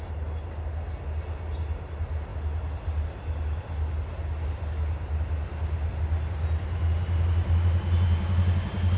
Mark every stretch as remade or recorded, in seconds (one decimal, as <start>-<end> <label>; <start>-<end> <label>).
0.0-9.0 recorded